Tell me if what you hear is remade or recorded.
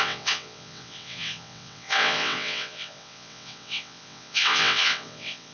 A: remade